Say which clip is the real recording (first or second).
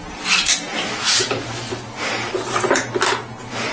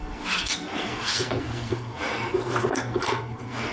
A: first